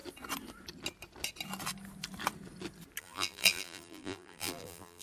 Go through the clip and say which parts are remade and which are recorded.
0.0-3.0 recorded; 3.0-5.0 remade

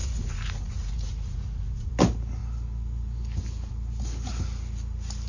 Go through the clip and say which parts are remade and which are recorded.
0.0-1.9 remade; 1.9-5.3 recorded

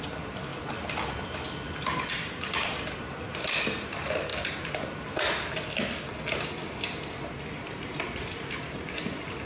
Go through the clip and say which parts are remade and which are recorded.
0.0-0.5 remade; 0.5-2.1 recorded; 2.1-4.3 remade; 4.3-7.1 recorded; 7.1-9.5 remade

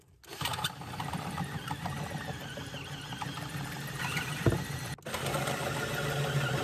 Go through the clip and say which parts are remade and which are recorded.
0.0-0.5 recorded; 0.5-4.5 remade; 4.5-6.6 recorded

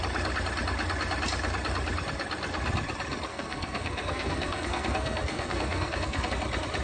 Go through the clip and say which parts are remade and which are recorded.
0.0-3.3 recorded; 3.3-6.3 remade; 6.3-6.8 recorded

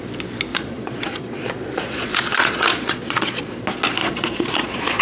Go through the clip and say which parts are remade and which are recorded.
0.0-0.5 recorded; 0.5-3.5 remade; 3.5-4.0 recorded; 4.0-5.0 remade

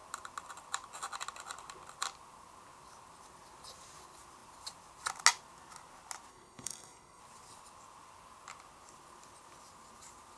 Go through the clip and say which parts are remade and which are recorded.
0.0-6.3 recorded; 6.3-7.2 remade; 7.2-10.4 recorded